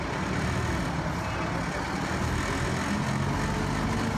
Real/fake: real